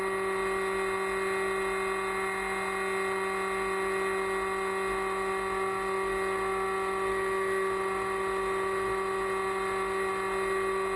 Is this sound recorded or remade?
recorded